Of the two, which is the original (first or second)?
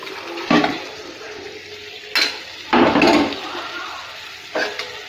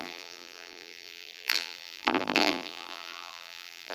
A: first